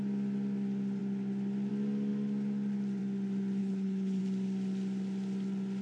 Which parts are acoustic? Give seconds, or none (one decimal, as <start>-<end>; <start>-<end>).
0.0-3.6; 4.2-5.8